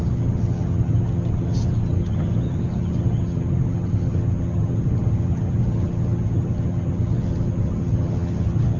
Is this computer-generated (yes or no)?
yes